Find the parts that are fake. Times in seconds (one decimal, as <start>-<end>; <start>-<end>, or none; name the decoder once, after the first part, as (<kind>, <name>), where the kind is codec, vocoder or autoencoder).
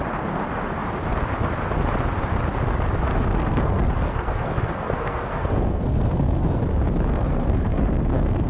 3.1-6.6 (codec, SNAC); 7.1-8.5